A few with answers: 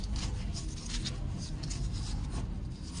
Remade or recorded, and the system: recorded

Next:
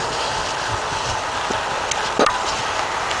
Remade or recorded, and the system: recorded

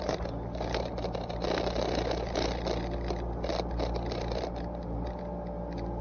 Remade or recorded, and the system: recorded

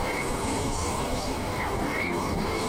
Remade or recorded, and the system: remade, codec, DAC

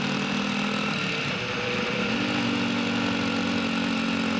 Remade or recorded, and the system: recorded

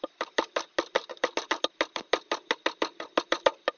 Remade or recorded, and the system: recorded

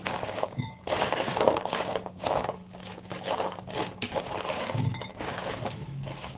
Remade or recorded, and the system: remade, codec, DAC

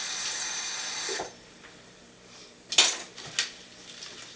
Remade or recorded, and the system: recorded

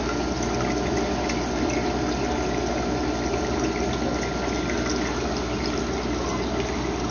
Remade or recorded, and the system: recorded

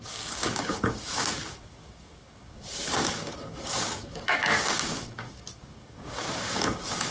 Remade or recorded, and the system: remade, codec, DAC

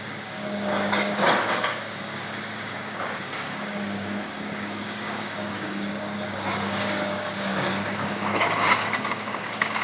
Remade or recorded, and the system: remade, codec, DAC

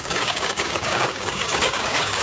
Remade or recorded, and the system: remade, codec, DAC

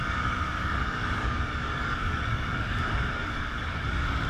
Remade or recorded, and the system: remade, codec, DAC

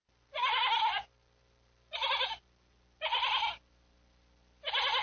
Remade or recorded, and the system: recorded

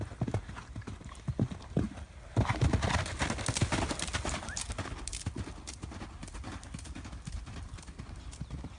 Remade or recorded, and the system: recorded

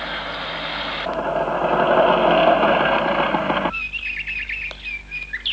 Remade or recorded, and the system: recorded